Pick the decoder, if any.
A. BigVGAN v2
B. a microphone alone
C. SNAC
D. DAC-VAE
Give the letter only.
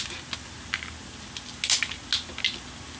B